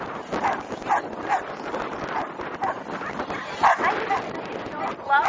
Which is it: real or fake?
real